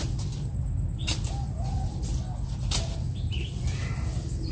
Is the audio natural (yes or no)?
yes